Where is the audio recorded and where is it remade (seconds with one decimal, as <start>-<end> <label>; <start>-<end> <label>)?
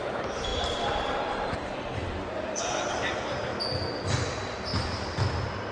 0.0-3.5 remade; 3.5-4.3 recorded; 4.3-4.7 remade; 4.7-5.7 recorded